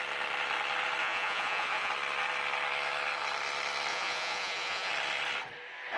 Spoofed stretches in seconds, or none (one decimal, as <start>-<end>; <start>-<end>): 1.0-1.9; 3.9-4.9